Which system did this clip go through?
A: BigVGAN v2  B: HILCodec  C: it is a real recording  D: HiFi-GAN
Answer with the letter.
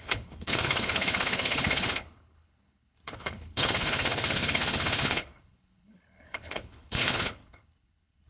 B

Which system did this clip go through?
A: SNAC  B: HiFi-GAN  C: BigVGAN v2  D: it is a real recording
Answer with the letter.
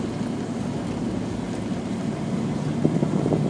D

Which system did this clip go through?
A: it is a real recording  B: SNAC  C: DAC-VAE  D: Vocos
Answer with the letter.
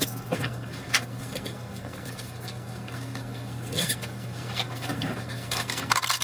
B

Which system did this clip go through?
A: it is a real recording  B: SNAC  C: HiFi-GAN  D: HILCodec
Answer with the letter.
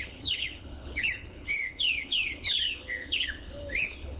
D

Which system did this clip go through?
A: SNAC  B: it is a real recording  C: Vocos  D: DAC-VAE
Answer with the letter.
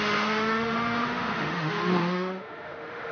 D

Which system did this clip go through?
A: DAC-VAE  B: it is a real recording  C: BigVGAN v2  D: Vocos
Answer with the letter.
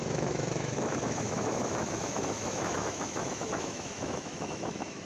A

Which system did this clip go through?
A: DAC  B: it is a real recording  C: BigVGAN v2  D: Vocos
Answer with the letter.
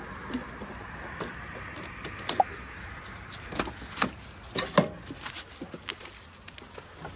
B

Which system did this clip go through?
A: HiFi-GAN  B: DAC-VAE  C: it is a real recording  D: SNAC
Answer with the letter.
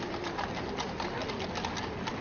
C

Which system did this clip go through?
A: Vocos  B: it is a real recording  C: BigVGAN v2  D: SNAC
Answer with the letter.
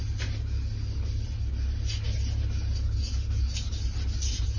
B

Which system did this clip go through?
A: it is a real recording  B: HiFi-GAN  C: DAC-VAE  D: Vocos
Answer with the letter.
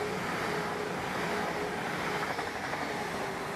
A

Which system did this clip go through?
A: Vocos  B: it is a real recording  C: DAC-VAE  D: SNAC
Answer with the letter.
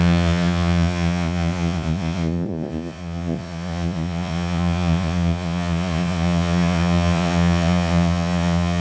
A